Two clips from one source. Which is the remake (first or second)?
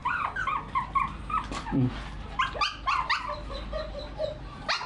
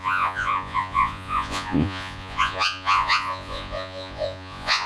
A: second